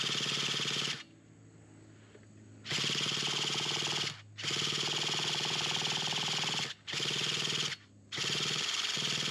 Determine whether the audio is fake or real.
real